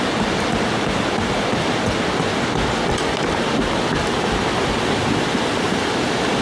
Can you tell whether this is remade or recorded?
recorded